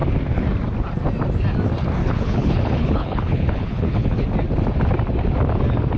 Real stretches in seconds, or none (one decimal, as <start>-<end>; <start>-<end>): 0.0-2.0; 4.2-6.0